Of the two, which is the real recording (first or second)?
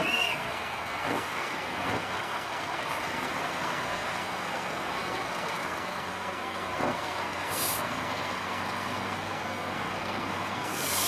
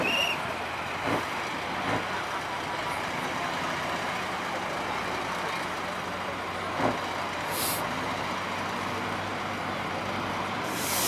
second